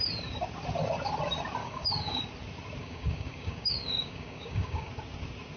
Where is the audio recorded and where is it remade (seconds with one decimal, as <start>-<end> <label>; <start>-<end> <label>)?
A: 0.0-1.6 recorded; 1.6-2.2 remade; 2.2-2.8 recorded; 2.8-4.9 remade; 4.9-5.6 recorded